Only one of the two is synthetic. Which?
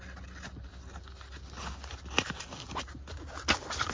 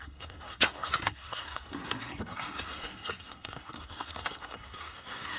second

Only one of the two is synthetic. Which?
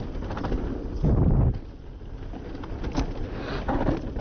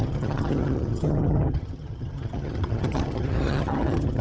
second